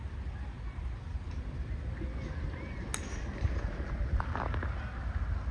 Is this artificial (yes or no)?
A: no